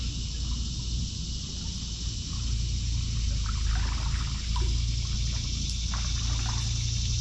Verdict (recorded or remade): recorded